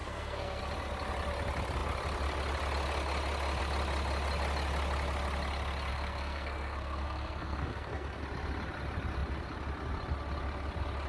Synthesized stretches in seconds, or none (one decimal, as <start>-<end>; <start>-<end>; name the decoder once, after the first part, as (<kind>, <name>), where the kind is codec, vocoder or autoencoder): 0.0-0.6 (codec, SNAC); 5.9-8.2